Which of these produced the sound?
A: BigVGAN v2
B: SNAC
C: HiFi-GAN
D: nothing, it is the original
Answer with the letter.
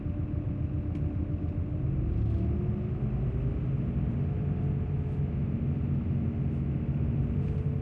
D